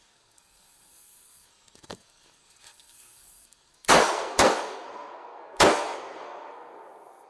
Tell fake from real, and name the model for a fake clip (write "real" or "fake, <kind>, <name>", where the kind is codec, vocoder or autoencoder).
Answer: fake, codec, SNAC